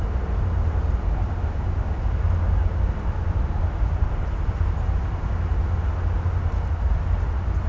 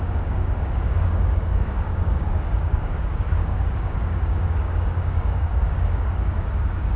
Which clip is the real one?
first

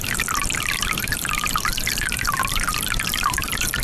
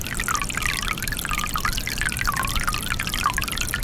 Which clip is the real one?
second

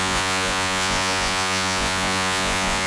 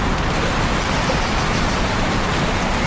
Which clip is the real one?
second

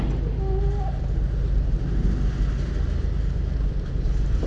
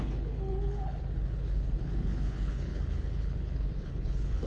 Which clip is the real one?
first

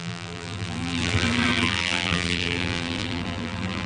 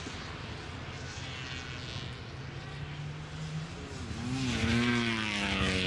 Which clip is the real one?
second